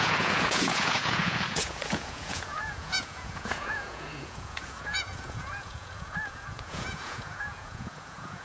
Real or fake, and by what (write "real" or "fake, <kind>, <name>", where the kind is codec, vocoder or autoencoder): fake, vocoder, Vocos